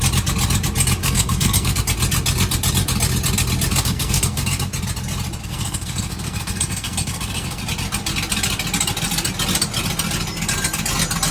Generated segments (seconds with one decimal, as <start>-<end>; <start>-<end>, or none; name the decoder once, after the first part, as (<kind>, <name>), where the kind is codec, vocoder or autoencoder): 1.0-1.8 (codec, SNAC); 3.7-4.7; 5.4-7.6